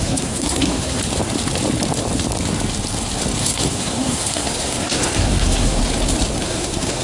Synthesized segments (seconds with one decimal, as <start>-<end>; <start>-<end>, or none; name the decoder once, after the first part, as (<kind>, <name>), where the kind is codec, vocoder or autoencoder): 0.0-1.0 (codec, SNAC); 3.4-5.8; 6.4-7.0